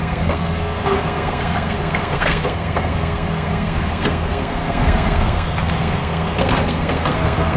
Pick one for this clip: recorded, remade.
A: remade